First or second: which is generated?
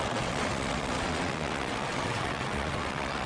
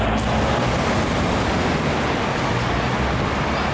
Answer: first